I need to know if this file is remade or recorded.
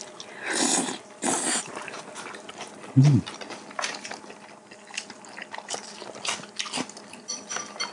recorded